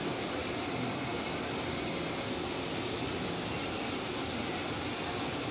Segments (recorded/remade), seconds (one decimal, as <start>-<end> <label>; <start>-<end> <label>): 0.0-5.5 recorded